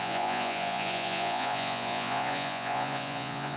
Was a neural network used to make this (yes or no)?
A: yes